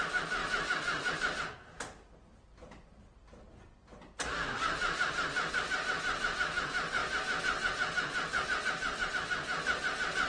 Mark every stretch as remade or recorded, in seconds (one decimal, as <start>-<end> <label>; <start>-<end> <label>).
0.0-10.3 recorded